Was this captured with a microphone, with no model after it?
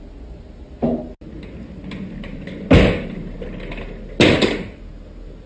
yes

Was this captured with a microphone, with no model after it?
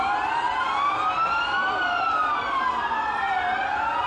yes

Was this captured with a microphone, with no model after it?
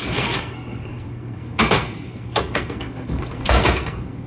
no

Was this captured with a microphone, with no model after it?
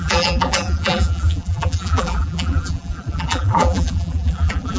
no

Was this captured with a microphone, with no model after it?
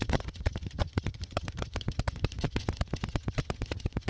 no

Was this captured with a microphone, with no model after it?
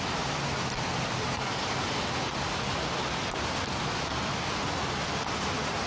yes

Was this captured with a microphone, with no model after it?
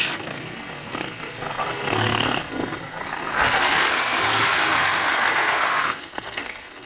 no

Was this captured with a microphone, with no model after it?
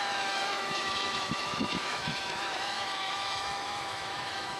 no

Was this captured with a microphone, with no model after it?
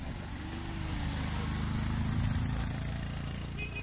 yes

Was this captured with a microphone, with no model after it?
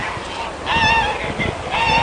yes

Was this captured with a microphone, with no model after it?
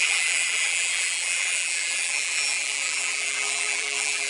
no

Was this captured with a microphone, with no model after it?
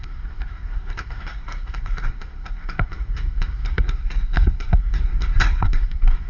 no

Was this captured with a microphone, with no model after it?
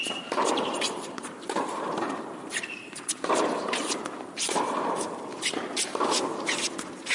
no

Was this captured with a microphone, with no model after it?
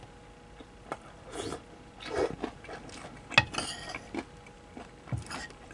yes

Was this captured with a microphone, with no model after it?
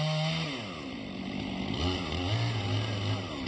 yes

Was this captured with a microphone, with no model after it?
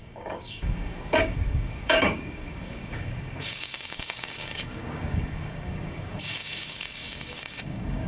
no